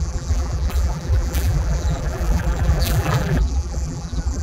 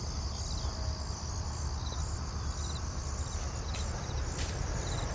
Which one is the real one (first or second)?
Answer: second